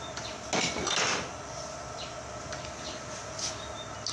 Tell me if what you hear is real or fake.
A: real